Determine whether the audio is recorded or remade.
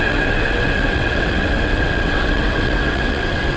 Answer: remade